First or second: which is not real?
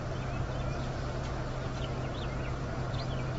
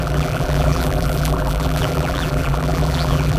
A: second